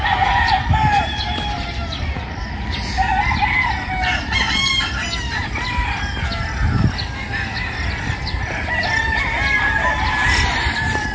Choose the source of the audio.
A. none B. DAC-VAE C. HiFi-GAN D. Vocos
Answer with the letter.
A